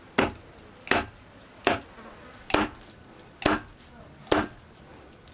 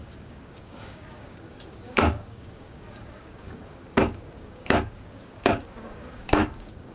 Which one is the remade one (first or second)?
second